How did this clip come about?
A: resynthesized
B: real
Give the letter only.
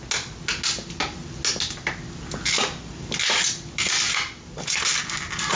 B